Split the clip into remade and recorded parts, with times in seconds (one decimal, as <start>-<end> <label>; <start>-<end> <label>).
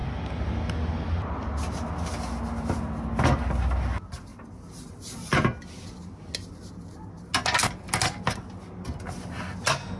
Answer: 0.0-4.3 recorded; 4.3-5.7 remade; 5.7-10.0 recorded